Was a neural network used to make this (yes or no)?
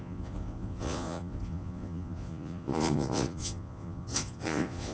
yes